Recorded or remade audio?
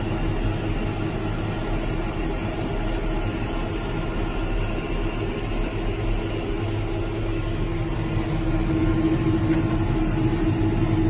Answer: recorded